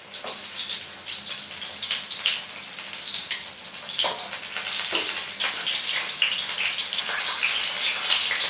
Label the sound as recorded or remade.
recorded